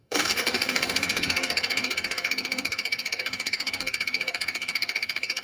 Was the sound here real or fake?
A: fake